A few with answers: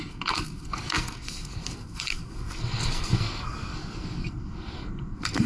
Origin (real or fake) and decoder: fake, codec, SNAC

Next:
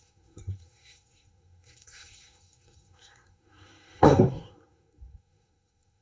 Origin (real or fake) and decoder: fake, codec, SNAC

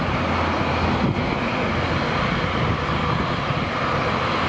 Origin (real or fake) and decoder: real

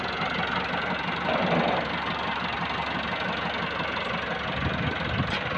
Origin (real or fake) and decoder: real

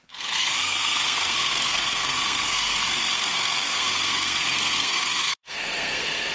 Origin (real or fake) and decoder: fake, codec, SNAC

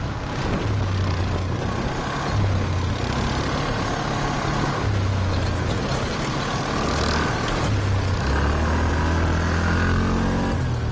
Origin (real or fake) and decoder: real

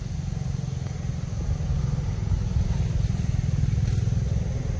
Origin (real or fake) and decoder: real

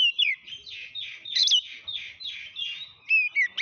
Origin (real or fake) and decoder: real